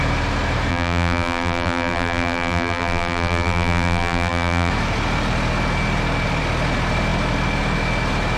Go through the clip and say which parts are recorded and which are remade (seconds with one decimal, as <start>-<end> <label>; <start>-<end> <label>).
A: 0.0-0.7 recorded; 0.7-4.7 remade; 4.7-8.4 recorded